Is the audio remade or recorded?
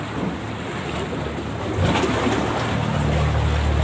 recorded